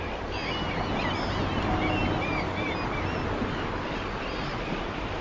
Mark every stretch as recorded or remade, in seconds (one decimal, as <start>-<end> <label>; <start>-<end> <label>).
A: 0.0-5.2 recorded